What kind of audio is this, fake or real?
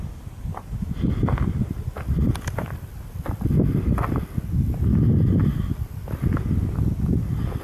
real